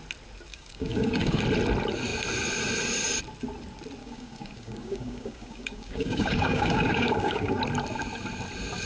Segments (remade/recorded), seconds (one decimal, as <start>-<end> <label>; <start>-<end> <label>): 0.0-0.5 recorded; 0.5-1.4 remade; 1.4-4.0 recorded; 4.0-7.6 remade; 7.6-8.9 recorded